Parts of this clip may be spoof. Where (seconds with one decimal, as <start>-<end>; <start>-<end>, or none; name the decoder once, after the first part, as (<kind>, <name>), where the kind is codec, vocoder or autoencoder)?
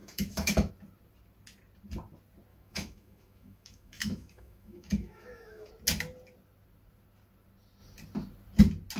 0.0-0.7 (autoencoder, DAC-VAE); 2.5-5.7